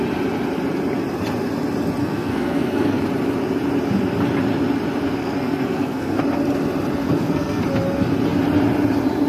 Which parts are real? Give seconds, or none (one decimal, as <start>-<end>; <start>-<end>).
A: 0.0-2.0; 3.0-5.2; 6.2-7.0; 7.6-9.3